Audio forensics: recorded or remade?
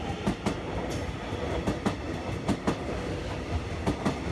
recorded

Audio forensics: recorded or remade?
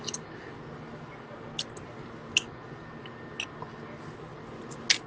recorded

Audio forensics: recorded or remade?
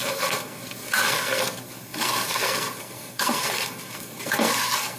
remade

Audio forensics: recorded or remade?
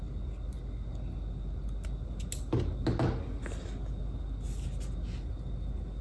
recorded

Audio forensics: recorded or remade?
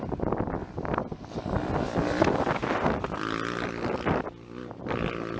recorded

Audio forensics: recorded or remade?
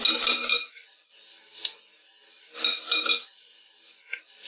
recorded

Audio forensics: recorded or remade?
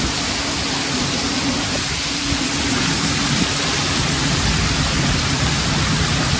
recorded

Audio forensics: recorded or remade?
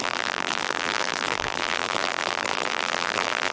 remade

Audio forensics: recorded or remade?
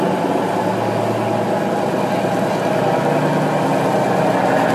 recorded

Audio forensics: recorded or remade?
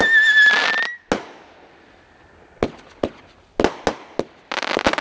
recorded